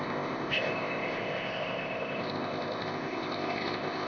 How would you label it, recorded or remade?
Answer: remade